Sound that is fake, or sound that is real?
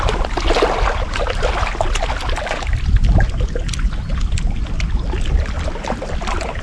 real